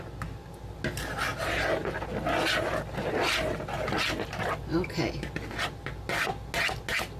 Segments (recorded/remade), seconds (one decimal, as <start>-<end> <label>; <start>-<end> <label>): 0.0-7.2 recorded